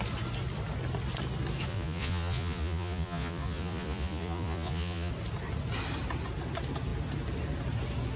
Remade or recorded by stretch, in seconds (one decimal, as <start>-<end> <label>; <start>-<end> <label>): 0.0-1.7 recorded; 1.7-5.1 remade; 5.1-8.2 recorded